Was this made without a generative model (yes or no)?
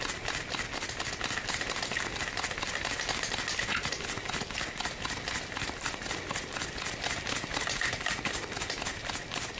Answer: yes